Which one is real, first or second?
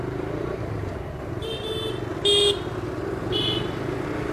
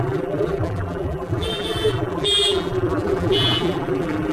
first